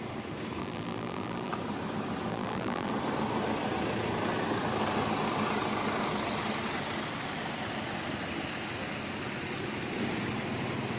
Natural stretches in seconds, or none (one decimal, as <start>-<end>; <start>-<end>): 0.0-0.6; 1.5-2.3; 2.9-11.0

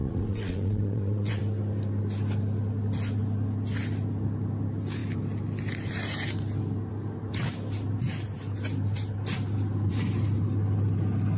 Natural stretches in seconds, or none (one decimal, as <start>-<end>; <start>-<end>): 1.4-11.4